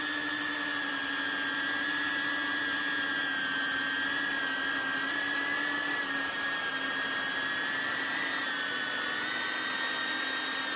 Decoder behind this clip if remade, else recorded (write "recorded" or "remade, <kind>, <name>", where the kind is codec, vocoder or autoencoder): recorded